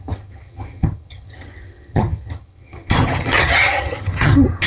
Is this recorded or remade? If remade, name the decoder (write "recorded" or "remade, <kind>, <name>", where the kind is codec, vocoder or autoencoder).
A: remade, vocoder, HiFi-GAN